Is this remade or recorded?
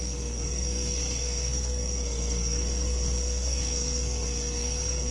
remade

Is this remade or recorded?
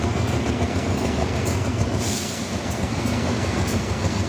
remade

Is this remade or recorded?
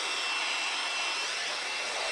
recorded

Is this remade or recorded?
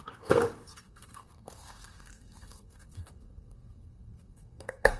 remade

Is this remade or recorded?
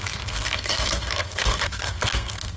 remade